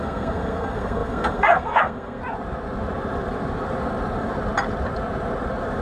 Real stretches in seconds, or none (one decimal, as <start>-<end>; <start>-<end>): 2.2-5.8